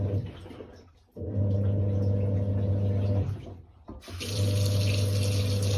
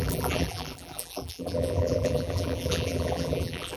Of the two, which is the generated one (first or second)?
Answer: second